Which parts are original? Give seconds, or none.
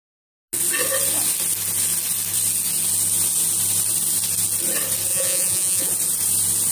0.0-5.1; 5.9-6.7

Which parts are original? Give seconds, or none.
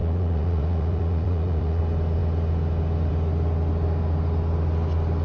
1.8-5.2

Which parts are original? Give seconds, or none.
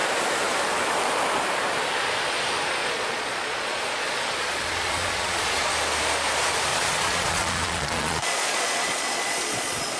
0.0-2.8; 5.7-6.7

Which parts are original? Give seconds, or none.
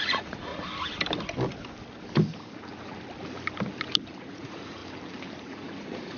0.5-4.2; 4.8-5.4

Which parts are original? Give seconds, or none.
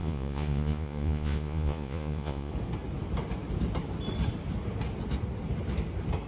2.5-6.3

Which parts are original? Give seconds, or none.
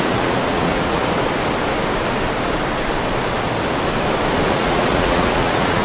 1.0-4.5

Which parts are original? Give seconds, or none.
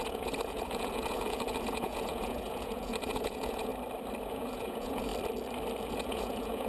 3.7-4.3; 5.1-5.9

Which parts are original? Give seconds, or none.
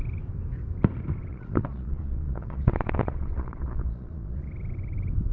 0.0-1.3; 4.5-5.3